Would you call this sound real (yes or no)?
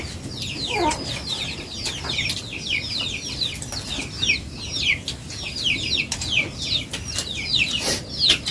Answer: yes